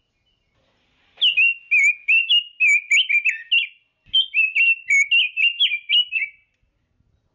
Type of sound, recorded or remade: recorded